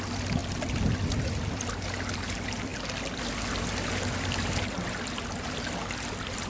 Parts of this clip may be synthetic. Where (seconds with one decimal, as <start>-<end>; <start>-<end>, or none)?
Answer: none